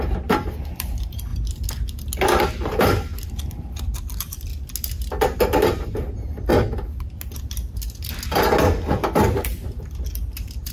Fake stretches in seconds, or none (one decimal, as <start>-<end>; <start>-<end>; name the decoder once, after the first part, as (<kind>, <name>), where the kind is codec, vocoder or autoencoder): 0.0-1.3 (vocoder, BigVGAN v2); 2.4-4.5; 5.1-6.5; 8.6-10.7